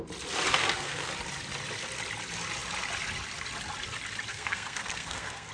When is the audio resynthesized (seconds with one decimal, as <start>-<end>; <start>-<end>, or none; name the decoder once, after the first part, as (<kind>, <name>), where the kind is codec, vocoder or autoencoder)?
0.6-1.1 (codec, SNAC); 4.3-5.5